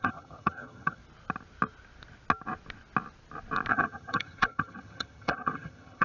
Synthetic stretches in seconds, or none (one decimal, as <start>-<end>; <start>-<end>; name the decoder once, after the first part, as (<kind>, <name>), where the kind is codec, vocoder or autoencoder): 0.0-1.0 (vocoder, HiFi-GAN); 3.7-6.0